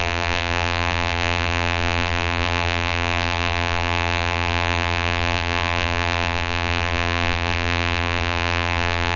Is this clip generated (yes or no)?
yes